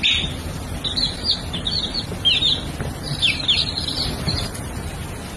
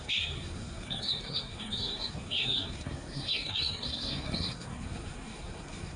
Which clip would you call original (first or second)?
first